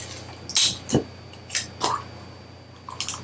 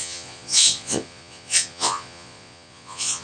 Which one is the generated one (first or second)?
second